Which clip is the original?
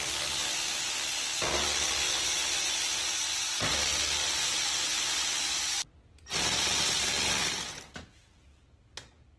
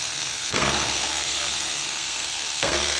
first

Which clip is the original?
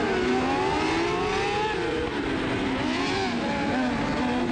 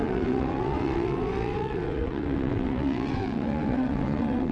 first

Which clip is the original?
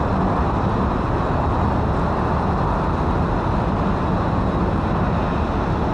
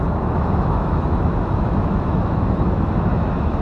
first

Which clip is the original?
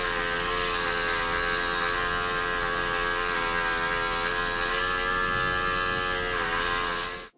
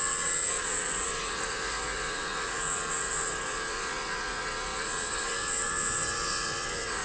first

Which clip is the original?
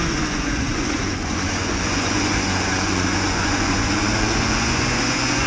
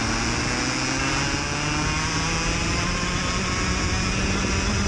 second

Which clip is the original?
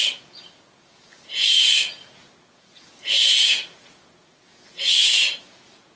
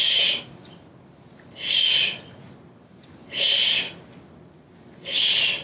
second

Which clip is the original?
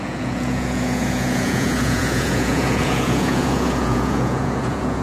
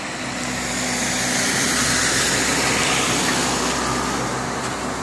second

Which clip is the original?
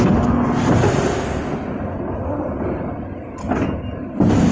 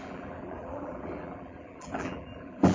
first